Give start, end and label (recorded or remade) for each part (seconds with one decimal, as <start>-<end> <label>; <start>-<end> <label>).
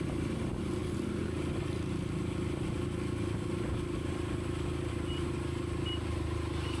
0.0-6.8 recorded